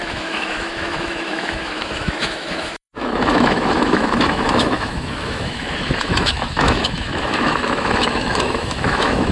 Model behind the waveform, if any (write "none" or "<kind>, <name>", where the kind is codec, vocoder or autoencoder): autoencoder, DAC-VAE